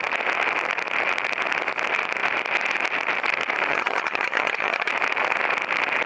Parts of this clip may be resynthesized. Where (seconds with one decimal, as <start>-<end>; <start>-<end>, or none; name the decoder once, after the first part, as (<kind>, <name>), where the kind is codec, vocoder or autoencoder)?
3.7-4.9 (vocoder, HiFi-GAN)